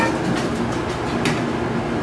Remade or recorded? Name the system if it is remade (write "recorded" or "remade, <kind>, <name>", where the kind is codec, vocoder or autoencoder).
recorded